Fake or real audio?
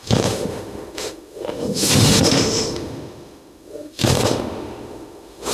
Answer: fake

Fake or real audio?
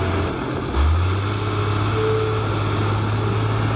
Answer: real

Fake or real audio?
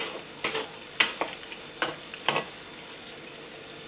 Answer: real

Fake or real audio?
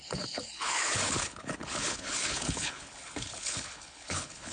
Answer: fake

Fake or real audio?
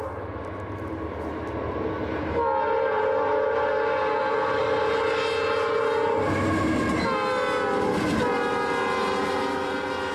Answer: real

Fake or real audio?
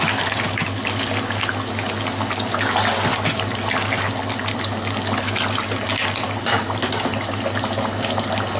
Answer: real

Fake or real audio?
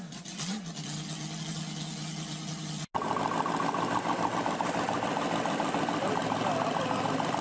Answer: real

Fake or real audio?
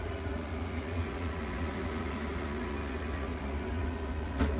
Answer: fake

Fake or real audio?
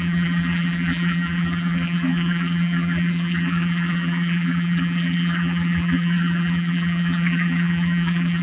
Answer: fake